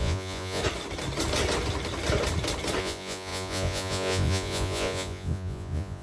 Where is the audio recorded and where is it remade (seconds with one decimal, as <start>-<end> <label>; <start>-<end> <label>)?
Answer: 0.0-0.6 remade; 0.6-2.8 recorded; 2.8-6.0 remade